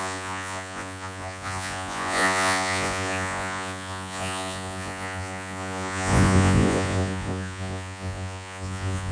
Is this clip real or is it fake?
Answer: fake